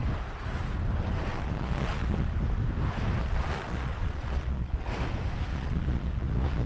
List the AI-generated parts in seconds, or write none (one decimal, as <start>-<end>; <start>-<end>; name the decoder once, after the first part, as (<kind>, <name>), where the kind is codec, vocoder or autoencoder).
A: 1.3-2.3 (vocoder, Vocos); 3.2-4.9; 5.5-6.7